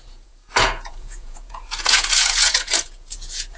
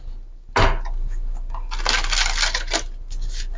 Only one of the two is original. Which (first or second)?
second